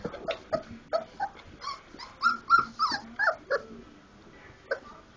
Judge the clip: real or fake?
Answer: real